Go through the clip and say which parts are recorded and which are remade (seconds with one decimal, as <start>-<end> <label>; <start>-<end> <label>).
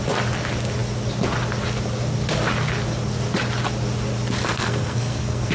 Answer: 0.0-4.4 recorded; 4.4-5.5 remade